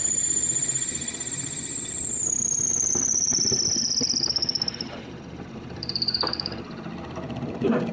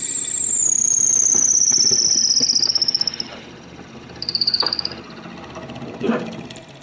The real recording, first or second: second